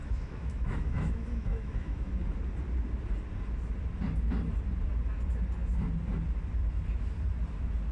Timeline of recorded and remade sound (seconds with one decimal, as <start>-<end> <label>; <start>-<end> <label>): 0.0-2.1 remade; 2.1-7.9 recorded